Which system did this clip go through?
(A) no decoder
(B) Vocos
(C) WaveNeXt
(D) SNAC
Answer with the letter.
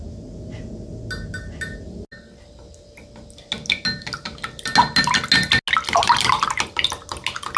A